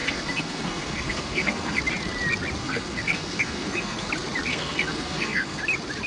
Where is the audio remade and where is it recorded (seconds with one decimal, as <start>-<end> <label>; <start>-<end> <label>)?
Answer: 0.0-1.8 remade; 1.8-2.6 recorded; 2.6-4.1 remade; 4.1-4.5 recorded; 4.5-5.6 remade; 5.6-6.1 recorded